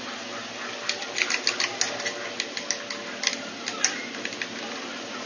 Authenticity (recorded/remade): recorded